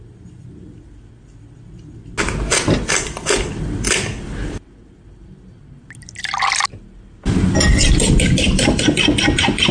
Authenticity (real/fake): real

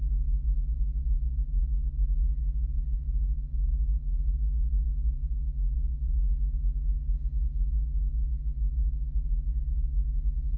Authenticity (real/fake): fake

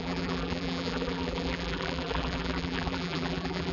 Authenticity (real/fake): fake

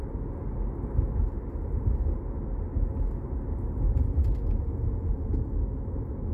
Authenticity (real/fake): real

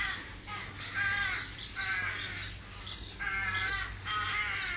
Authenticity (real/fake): real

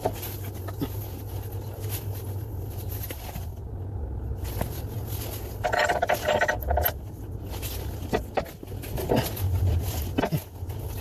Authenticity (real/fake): real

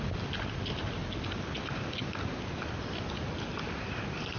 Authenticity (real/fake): real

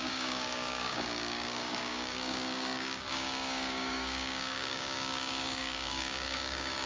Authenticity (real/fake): fake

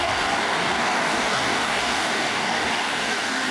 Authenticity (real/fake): fake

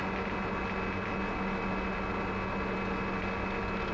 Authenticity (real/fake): real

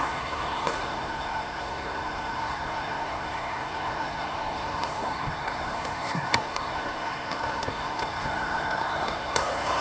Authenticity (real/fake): fake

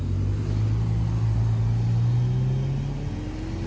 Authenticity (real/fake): real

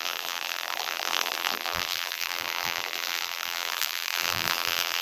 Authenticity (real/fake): fake